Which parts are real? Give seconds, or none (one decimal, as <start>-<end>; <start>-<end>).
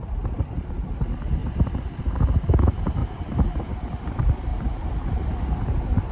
0.0-3.0; 3.6-4.5; 5.1-6.1